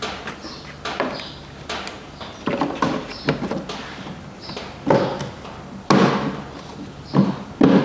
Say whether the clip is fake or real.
real